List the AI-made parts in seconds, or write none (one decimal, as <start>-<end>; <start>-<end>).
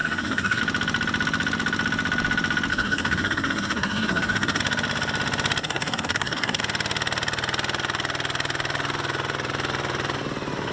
0.0-0.6; 2.7-4.6; 5.6-6.6